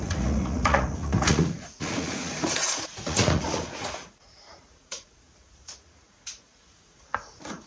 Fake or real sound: fake